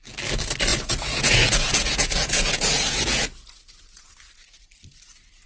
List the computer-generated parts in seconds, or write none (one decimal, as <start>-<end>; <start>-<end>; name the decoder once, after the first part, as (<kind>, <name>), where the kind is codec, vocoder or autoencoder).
0.7-4.0 (vocoder, Vocos)